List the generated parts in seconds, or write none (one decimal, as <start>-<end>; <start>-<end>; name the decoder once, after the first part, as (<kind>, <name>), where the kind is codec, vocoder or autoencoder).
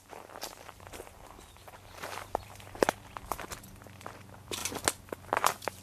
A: 0.0-4.6 (vocoder, BigVGAN v2); 5.3-5.8